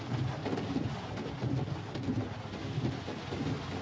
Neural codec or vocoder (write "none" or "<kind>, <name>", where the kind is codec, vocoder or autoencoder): none